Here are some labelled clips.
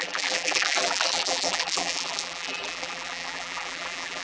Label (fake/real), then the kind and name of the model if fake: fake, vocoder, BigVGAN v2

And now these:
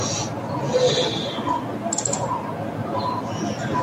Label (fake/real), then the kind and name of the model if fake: real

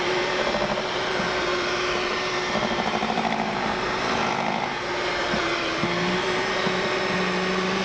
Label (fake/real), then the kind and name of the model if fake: fake, vocoder, BigVGAN v2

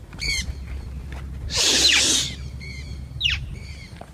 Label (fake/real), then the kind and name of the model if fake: real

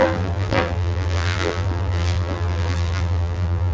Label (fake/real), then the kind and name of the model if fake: fake, vocoder, BigVGAN v2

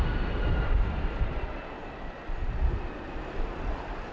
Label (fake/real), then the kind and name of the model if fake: real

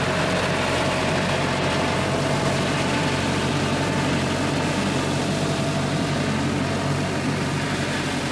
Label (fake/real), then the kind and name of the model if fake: fake, vocoder, BigVGAN v2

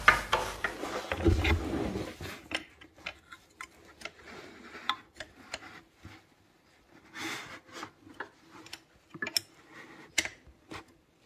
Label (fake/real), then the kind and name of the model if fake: real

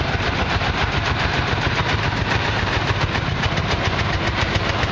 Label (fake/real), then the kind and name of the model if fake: fake, vocoder, BigVGAN v2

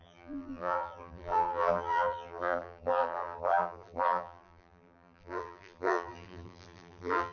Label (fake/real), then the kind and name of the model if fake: fake, vocoder, BigVGAN v2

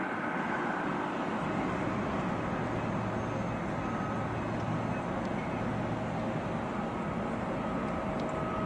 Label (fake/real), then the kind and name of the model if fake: real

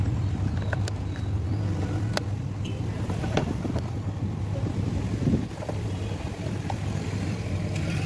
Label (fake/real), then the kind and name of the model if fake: fake, vocoder, BigVGAN v2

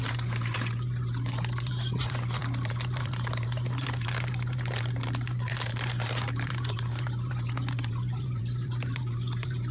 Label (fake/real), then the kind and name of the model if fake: fake, vocoder, BigVGAN v2